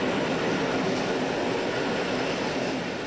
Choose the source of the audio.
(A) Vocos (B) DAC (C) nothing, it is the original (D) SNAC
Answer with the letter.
C